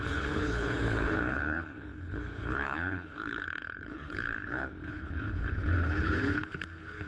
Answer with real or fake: fake